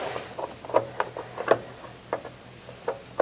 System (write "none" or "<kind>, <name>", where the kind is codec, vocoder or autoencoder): none